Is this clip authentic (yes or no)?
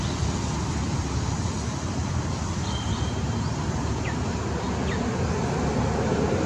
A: yes